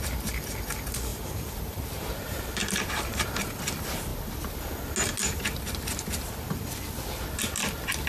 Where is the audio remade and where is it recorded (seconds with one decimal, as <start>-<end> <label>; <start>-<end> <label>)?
0.0-1.1 recorded; 1.1-3.6 remade; 3.6-8.1 recorded

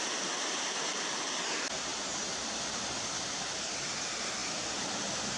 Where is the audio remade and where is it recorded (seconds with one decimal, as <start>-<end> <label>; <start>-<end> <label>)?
0.0-5.4 recorded

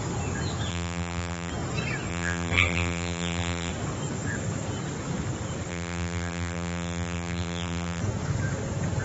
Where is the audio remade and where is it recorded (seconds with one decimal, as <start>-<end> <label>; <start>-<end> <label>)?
0.0-0.7 recorded; 0.7-1.5 remade; 1.5-2.1 recorded; 2.1-3.7 remade; 3.7-5.7 recorded; 5.7-8.0 remade; 8.0-9.0 recorded

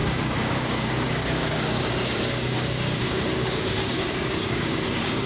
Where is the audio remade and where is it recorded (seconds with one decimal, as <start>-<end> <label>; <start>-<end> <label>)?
0.0-5.3 remade

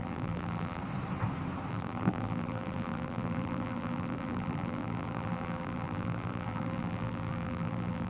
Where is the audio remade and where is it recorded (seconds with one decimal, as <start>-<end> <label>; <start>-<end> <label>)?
0.0-0.8 remade; 0.8-1.7 recorded; 1.7-8.1 remade

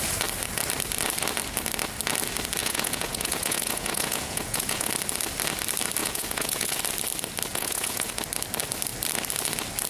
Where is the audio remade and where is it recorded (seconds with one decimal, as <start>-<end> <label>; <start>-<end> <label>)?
0.0-2.6 recorded; 2.6-4.9 remade; 4.9-6.0 recorded; 6.0-6.8 remade; 6.8-7.5 recorded; 7.5-8.1 remade; 8.1-9.9 recorded

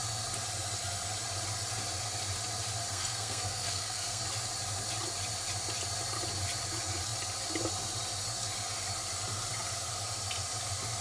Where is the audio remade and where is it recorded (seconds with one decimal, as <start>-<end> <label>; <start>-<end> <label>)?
0.0-2.9 recorded; 2.9-4.2 remade; 4.2-11.0 recorded

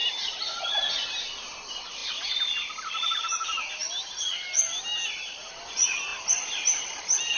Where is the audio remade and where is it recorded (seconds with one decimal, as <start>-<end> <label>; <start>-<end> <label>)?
0.0-7.4 recorded